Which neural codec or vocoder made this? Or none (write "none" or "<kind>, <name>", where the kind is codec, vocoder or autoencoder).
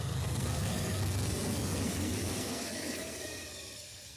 codec, SNAC